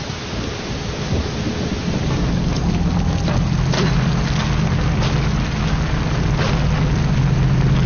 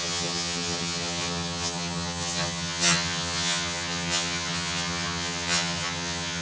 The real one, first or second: first